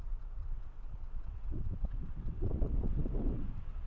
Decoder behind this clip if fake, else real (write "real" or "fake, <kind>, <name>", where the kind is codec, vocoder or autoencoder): fake, vocoder, WaveNeXt